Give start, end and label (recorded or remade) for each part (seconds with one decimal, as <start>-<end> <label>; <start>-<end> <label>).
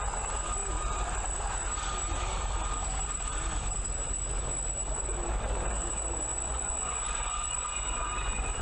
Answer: 0.0-6.3 recorded; 6.3-8.6 remade